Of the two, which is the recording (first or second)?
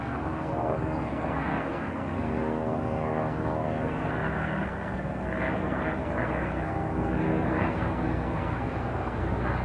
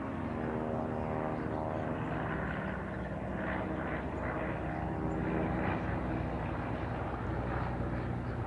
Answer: second